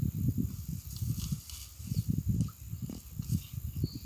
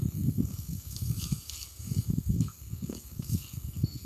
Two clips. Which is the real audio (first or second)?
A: first